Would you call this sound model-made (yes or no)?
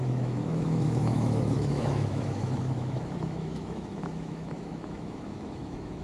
yes